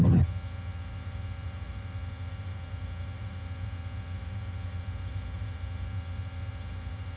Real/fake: fake